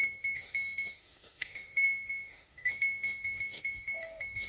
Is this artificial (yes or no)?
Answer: yes